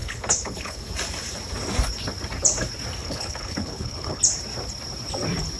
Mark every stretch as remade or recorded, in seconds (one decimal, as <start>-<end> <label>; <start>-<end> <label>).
0.0-0.8 remade; 0.8-3.0 recorded; 3.0-4.2 remade; 4.2-5.6 recorded